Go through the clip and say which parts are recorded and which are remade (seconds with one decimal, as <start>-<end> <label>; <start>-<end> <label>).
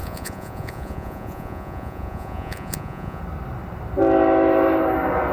0.0-3.2 remade; 3.2-5.3 recorded